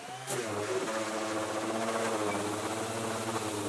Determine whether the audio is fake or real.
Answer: real